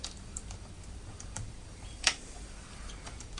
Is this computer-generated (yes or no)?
yes